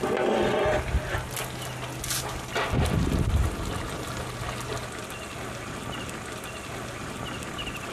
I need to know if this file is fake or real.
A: real